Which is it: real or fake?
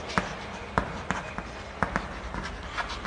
real